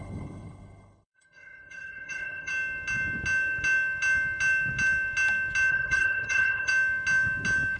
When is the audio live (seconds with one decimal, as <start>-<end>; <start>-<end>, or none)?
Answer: 2.5-5.7; 6.7-7.8

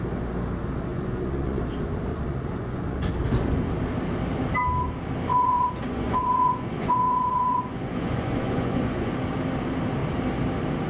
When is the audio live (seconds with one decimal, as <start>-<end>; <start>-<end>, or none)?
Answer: 0.0-0.9; 1.6-2.1; 3.1-5.3; 9.1-10.9

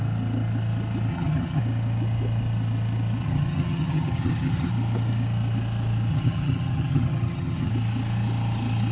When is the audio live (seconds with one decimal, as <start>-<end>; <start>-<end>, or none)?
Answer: 0.0-1.1; 1.6-3.2; 4.7-6.1; 7.7-8.9

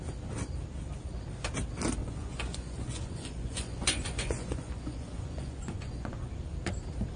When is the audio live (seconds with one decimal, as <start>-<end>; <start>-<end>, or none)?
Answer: 0.0-2.0; 6.3-7.2

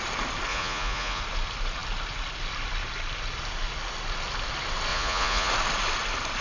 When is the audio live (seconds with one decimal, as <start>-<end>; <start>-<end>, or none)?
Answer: 0.0-0.5; 1.2-4.9; 5.5-6.4